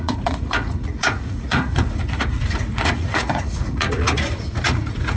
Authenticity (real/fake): fake